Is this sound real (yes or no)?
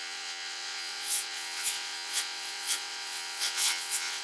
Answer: no